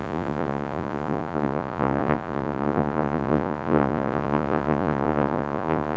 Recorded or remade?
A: remade